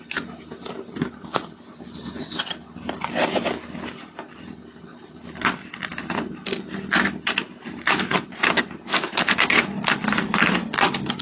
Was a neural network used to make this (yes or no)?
yes